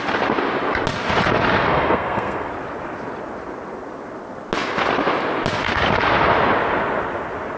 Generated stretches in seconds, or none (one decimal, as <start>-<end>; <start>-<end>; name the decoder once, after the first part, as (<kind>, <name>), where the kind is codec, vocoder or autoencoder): 1.7-2.5 (codec, SNAC)